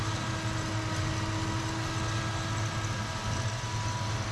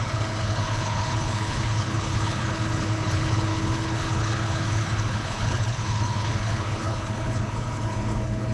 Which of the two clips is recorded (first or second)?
first